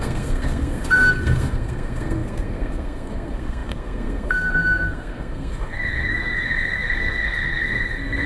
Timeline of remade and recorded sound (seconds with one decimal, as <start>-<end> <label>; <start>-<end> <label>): 0.0-8.3 remade